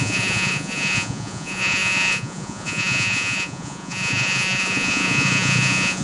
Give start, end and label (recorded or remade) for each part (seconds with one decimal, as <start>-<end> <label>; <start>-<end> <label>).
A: 0.0-6.0 remade